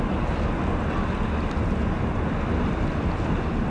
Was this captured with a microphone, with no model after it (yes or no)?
yes